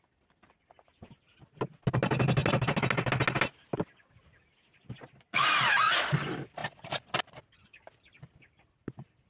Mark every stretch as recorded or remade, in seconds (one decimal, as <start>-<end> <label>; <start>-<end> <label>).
0.0-9.3 recorded